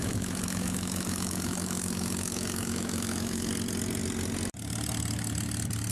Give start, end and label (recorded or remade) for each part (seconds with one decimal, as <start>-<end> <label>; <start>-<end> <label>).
0.0-3.5 remade; 3.5-5.9 recorded